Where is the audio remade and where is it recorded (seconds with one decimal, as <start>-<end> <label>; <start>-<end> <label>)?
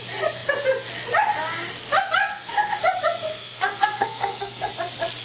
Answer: 0.0-2.2 recorded; 2.2-2.8 remade; 2.8-3.3 recorded; 3.3-4.7 remade; 4.7-5.2 recorded